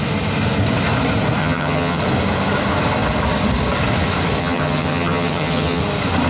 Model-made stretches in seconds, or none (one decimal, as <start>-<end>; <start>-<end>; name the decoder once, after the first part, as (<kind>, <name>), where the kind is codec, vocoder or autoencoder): 1.4-2.0 (vocoder, HiFi-GAN); 4.4-5.8